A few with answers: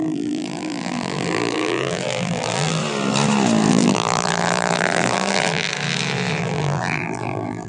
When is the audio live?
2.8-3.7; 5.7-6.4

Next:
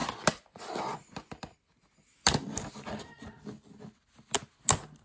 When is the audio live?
0.0-5.0

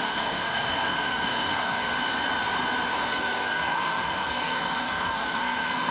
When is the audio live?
1.9-3.0